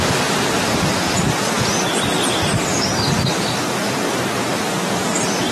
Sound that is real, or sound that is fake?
real